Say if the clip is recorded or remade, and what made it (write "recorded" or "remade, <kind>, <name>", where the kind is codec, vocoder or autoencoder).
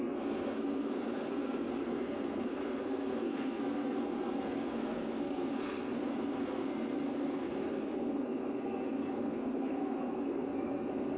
remade, codec, SNAC